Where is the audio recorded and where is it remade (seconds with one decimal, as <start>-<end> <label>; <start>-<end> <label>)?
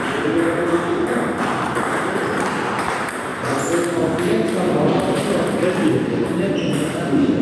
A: 0.0-3.3 remade; 3.3-6.5 recorded; 6.5-7.4 remade